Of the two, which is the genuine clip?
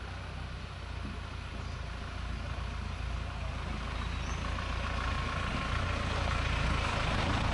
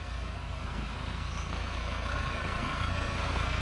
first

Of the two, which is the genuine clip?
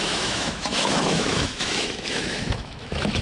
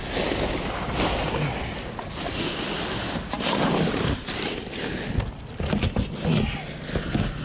second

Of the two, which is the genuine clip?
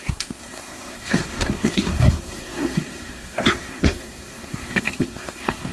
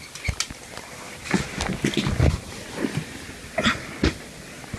second